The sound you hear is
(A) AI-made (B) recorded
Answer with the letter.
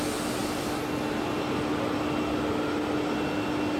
B